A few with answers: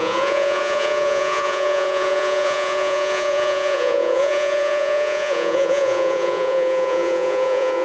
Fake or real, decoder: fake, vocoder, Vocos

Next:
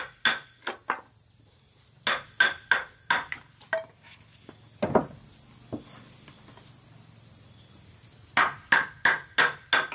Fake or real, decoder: real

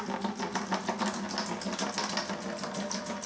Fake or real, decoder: real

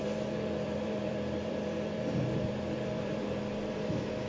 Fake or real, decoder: fake, vocoder, BigVGAN v2